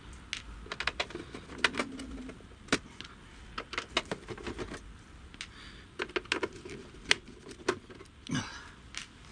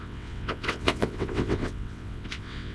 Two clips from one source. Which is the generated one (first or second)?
second